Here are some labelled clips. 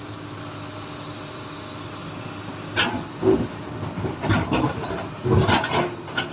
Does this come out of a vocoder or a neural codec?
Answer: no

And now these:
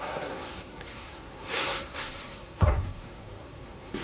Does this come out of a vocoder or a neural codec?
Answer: yes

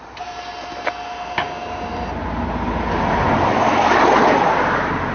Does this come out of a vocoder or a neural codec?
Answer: no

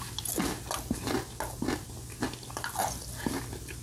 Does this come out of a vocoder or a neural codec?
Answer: no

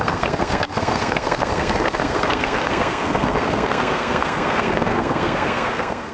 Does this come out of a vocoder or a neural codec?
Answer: yes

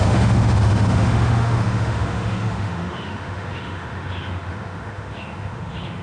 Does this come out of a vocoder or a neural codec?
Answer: yes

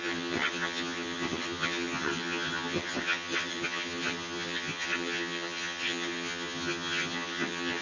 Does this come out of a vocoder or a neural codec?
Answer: yes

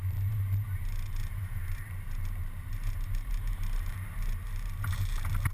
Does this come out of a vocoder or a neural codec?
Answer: yes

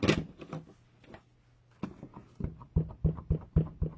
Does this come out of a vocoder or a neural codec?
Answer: no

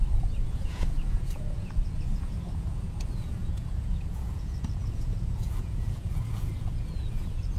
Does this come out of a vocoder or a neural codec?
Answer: yes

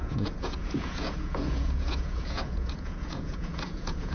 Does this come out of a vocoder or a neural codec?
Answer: yes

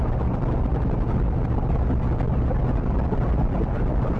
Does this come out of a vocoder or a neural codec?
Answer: no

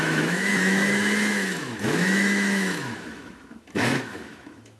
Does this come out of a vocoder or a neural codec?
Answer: yes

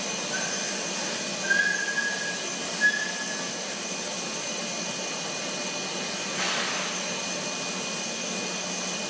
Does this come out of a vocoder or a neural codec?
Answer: no